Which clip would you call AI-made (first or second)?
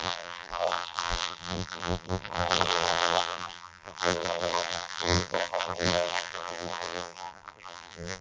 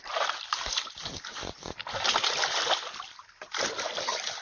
first